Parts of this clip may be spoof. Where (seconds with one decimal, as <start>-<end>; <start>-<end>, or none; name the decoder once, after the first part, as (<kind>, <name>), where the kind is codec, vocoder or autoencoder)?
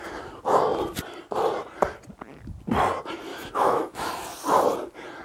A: 3.3-4.1 (autoencoder, DAC-VAE)